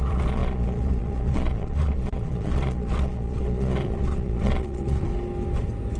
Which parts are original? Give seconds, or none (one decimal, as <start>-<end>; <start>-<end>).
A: 5.1-6.0